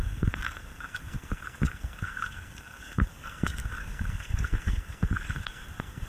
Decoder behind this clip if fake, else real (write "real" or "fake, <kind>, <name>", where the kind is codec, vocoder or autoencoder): fake, codec, SNAC